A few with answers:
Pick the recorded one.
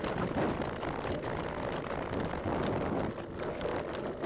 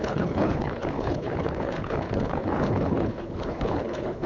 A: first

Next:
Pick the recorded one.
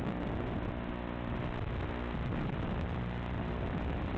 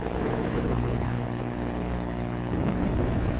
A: first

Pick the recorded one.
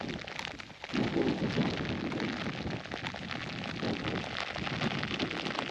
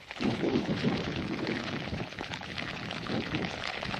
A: first